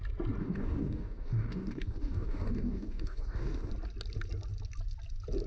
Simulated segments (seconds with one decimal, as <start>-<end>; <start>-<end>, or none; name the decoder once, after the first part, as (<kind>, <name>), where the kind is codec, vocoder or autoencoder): 0.4-3.7 (codec, DAC)